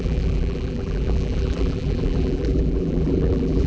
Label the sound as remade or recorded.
remade